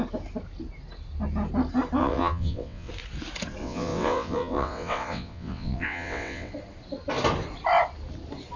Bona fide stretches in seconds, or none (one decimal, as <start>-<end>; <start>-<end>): 0.0-2.0; 2.9-3.6; 6.5-8.6